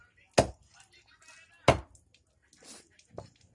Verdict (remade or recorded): recorded